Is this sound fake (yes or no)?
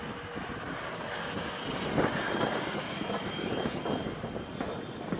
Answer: no